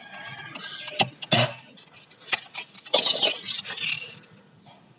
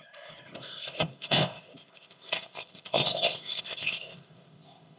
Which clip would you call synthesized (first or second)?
second